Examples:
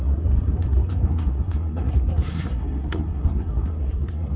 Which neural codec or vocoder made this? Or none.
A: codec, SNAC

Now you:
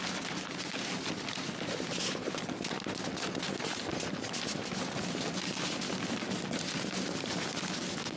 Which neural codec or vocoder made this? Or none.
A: none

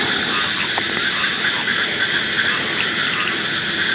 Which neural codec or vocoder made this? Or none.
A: none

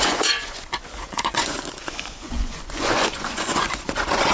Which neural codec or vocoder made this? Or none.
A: vocoder, Vocos